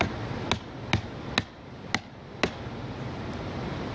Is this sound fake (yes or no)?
no